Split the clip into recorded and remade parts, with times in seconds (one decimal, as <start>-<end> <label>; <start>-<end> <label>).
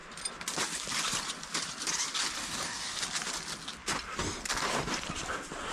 0.0-2.4 recorded; 2.4-3.0 remade; 3.0-5.7 recorded